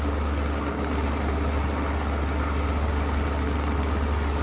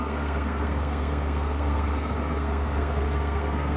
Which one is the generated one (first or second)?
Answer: second